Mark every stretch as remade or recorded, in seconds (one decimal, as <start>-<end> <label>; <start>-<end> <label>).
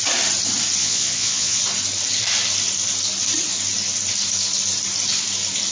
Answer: 0.0-0.8 recorded; 0.8-1.6 remade; 1.6-5.7 recorded